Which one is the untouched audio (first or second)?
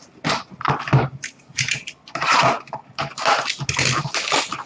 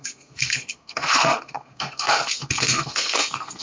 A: first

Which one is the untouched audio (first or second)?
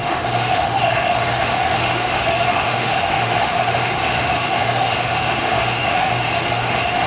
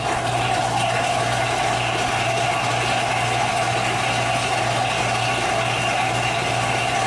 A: second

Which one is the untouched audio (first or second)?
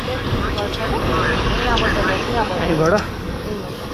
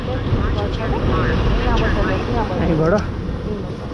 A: second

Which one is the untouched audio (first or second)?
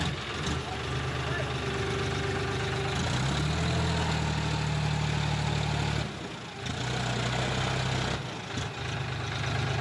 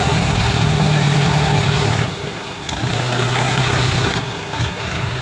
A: first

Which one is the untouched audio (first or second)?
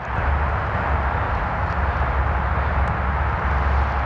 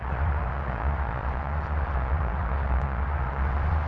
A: first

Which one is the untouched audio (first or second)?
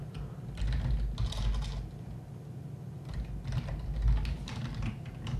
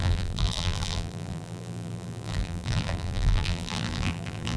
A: first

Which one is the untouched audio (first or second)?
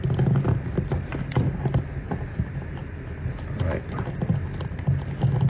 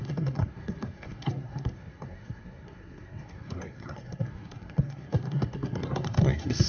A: first